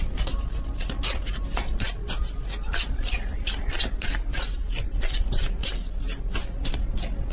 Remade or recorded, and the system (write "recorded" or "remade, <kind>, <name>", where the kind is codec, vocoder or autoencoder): recorded